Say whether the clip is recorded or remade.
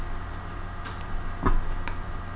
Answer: recorded